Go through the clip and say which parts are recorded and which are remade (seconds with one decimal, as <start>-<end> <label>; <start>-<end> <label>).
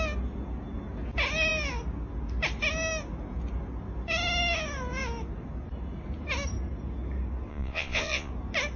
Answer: 0.0-7.5 recorded; 7.5-8.3 remade; 8.3-8.8 recorded